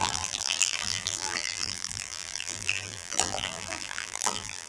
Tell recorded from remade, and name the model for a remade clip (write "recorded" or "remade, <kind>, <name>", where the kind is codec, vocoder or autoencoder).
remade, vocoder, BigVGAN v2